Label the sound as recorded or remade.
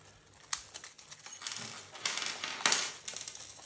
recorded